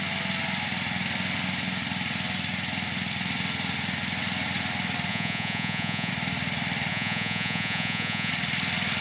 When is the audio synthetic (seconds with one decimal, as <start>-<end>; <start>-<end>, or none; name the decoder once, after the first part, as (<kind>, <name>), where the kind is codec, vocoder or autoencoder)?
5.1-6.1 (vocoder, Vocos); 6.9-8.3